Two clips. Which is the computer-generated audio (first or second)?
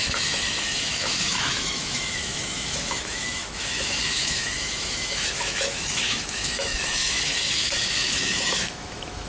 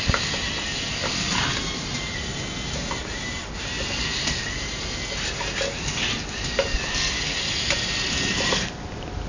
first